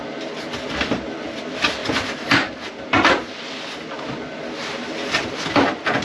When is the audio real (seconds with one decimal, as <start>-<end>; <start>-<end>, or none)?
0.0-6.0